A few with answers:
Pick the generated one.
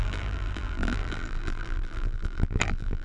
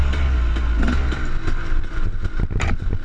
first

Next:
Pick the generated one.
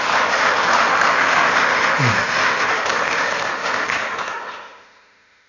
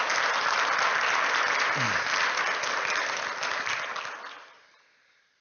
first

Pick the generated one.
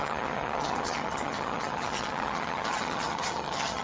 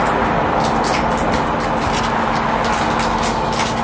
first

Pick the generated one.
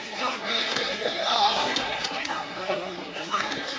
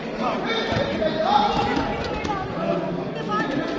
first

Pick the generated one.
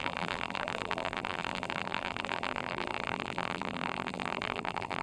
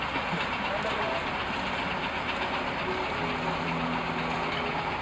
first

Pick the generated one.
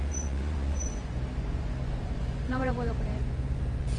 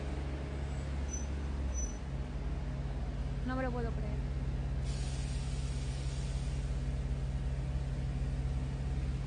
first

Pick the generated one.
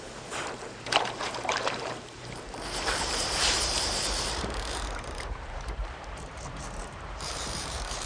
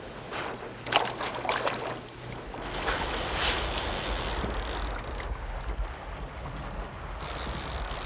first